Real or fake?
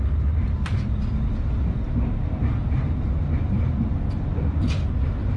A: real